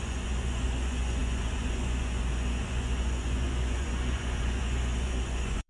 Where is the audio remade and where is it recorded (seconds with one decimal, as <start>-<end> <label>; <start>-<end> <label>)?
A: 0.0-5.7 remade